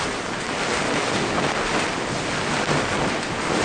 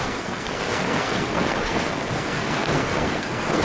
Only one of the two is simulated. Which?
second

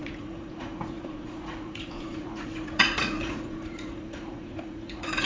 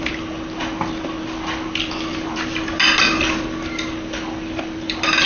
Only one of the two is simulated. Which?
first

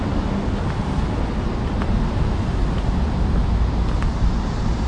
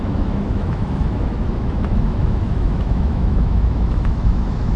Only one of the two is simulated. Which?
second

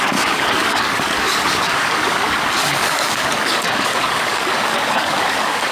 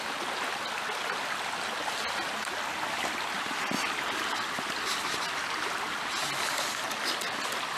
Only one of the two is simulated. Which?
first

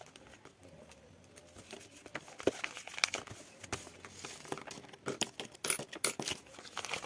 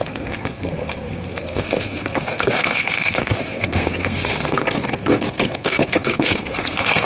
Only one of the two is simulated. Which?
second